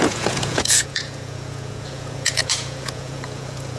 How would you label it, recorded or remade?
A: remade